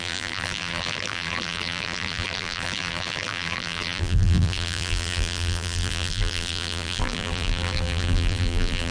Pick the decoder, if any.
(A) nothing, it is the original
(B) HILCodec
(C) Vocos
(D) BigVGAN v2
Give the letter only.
D